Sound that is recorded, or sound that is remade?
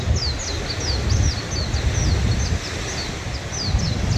recorded